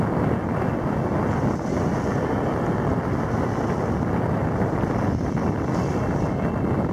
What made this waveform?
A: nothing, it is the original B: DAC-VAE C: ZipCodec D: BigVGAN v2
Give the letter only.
A